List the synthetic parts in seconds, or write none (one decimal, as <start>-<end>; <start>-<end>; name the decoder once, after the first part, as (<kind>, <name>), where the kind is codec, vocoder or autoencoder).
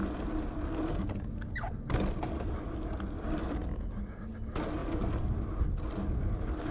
none